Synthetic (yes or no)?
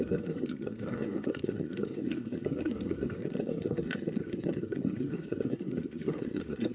yes